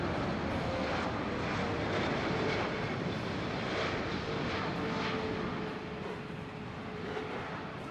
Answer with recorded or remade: recorded